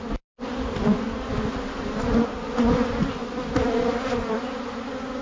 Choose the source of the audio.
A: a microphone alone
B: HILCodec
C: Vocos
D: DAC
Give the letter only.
A